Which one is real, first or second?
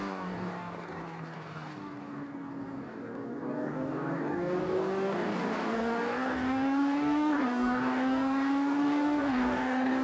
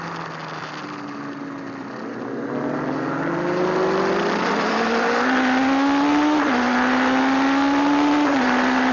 second